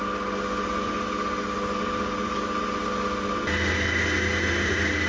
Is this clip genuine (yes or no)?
yes